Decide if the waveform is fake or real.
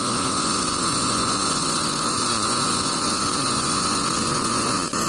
fake